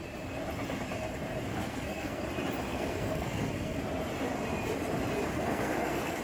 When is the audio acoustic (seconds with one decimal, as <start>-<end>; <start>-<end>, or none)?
0.0-1.5; 2.2-2.7; 3.8-5.3